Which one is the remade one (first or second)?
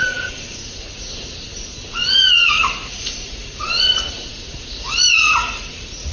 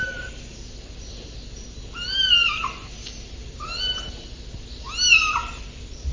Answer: first